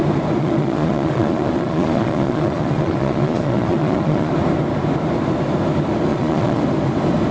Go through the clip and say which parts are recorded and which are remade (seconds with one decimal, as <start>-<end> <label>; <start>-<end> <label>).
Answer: 0.0-0.4 recorded; 0.4-4.3 remade; 4.3-6.1 recorded; 6.1-6.6 remade; 6.6-7.3 recorded